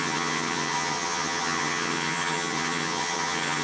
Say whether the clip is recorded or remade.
remade